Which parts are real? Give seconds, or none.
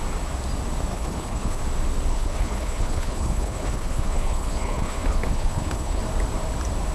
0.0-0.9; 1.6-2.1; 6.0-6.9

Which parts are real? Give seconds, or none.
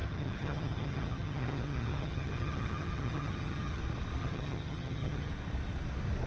3.8-4.2; 5.3-6.3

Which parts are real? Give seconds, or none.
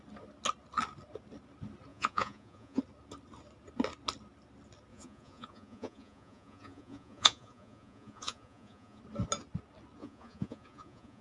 0.0-1.9; 2.8-4.9; 9.0-10.0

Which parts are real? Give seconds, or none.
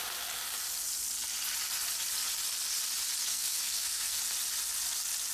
0.0-3.2; 4.2-5.3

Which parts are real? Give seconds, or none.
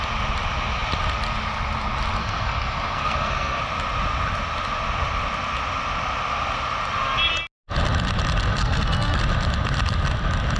0.0-2.2; 3.6-8.6; 9.2-10.6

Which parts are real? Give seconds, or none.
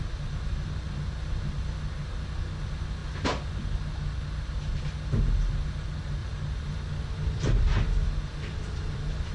0.0-6.2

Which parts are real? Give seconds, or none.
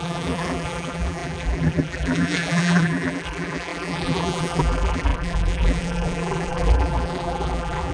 none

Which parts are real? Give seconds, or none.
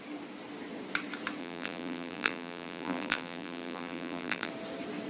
0.0-1.4; 4.5-5.1